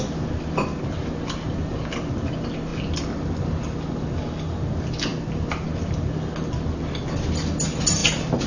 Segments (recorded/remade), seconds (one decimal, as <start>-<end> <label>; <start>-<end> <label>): 0.0-8.5 recorded